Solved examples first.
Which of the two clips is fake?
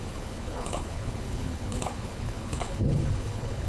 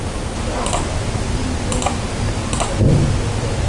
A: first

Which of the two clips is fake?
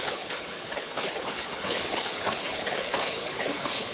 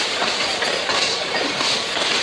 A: first